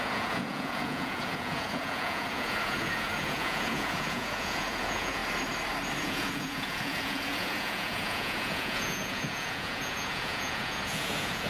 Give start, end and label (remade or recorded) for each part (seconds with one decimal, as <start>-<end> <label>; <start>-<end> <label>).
0.0-5.2 remade; 5.2-6.0 recorded; 6.0-11.5 remade